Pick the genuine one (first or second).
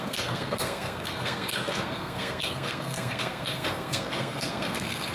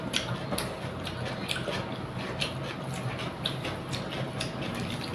second